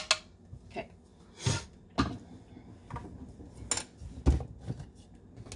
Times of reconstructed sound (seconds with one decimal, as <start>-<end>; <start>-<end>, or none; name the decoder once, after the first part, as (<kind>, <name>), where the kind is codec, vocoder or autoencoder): none